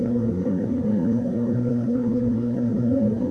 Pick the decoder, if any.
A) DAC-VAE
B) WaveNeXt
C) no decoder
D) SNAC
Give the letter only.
D